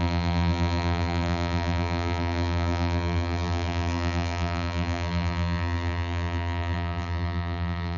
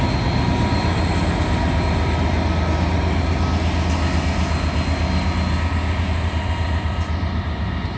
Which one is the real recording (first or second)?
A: second